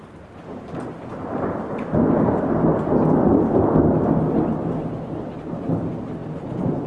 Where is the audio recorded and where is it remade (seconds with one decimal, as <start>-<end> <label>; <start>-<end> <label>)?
0.0-2.7 remade; 2.7-5.3 recorded; 5.3-6.9 remade